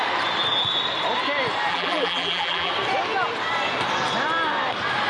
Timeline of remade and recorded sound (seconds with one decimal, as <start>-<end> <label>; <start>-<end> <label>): 0.0-1.7 recorded; 1.7-2.7 remade; 2.7-5.1 recorded